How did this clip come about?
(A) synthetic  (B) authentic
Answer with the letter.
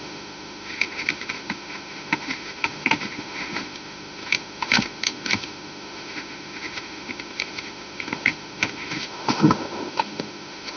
A